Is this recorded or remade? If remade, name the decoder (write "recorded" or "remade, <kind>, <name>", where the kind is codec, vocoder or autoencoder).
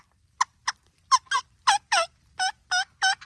recorded